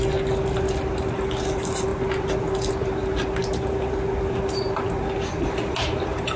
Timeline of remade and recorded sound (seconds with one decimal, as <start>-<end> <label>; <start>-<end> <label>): 0.0-6.4 recorded